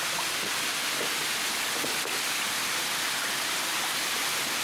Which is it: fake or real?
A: real